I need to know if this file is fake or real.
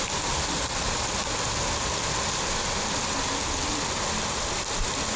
real